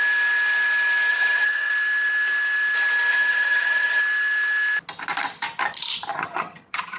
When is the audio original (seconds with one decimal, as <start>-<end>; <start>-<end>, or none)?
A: 0.0-1.1; 1.7-3.1; 4.0-6.1